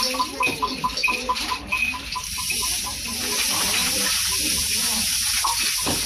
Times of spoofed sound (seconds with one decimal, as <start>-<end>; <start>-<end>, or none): 1.0-3.4